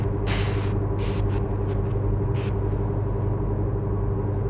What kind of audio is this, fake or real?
real